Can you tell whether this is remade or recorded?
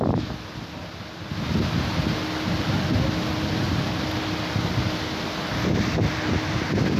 recorded